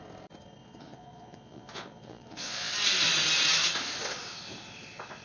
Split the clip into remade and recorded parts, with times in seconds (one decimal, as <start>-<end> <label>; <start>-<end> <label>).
0.0-0.6 recorded; 0.6-2.7 remade; 2.7-5.2 recorded

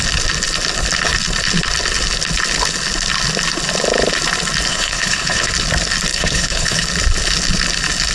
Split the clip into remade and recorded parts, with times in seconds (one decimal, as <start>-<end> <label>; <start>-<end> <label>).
0.0-4.7 recorded; 4.7-5.5 remade; 5.5-6.1 recorded; 6.1-6.9 remade; 6.9-8.1 recorded

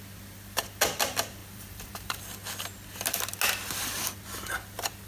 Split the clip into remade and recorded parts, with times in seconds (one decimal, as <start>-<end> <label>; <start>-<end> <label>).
0.0-1.4 recorded; 1.4-2.2 remade; 2.2-5.1 recorded